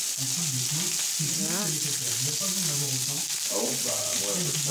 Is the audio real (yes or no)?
yes